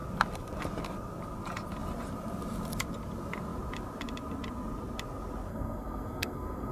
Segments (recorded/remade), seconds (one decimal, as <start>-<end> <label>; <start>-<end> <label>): 0.0-5.5 recorded; 5.5-6.7 remade